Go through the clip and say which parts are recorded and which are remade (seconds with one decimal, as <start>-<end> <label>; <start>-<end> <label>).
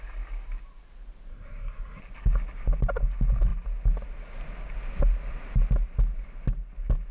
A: 0.0-1.3 recorded; 1.3-2.0 remade; 2.0-7.1 recorded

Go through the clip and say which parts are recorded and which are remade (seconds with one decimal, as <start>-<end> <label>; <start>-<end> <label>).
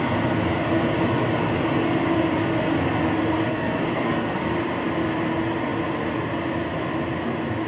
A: 0.0-3.5 recorded; 3.5-4.5 remade; 4.5-7.7 recorded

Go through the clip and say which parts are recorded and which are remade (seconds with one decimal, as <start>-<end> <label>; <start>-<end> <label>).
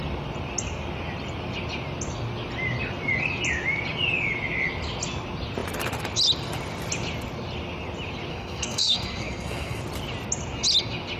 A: 0.0-8.3 recorded; 8.3-9.8 remade; 9.8-11.2 recorded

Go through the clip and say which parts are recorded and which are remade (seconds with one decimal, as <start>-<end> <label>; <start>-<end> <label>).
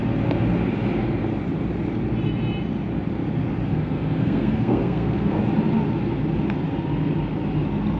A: 0.0-3.7 recorded; 3.7-5.4 remade; 5.4-8.0 recorded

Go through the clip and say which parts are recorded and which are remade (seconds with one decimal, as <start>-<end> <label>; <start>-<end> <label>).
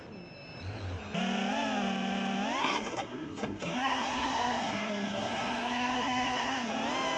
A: 0.0-2.6 recorded; 2.6-6.7 remade; 6.7-7.2 recorded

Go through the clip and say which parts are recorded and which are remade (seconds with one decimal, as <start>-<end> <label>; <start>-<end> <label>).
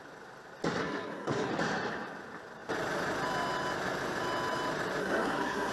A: 0.0-0.8 recorded; 0.8-1.5 remade; 1.5-5.0 recorded; 5.0-5.7 remade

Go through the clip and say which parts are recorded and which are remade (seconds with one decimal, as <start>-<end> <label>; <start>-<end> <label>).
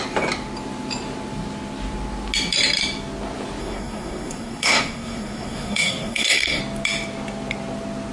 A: 0.0-3.6 recorded; 3.6-6.6 remade; 6.6-8.1 recorded